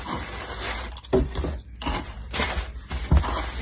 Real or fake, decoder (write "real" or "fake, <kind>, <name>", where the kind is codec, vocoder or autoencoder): real